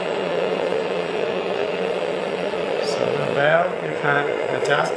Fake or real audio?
fake